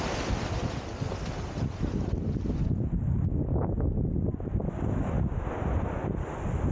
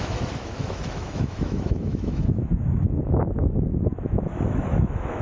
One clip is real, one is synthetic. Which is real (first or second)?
first